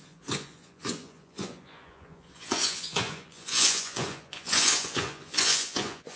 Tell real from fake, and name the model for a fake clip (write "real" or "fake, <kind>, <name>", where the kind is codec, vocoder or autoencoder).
fake, vocoder, Vocos